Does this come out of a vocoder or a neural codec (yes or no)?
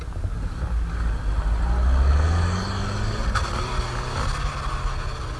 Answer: no